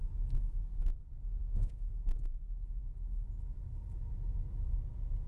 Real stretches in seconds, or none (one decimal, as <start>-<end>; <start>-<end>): 0.0-1.4; 1.9-5.3